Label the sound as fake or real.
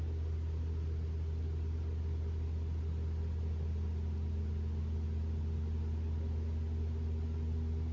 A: real